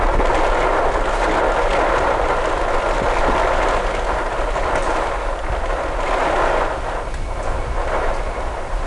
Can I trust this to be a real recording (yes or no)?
yes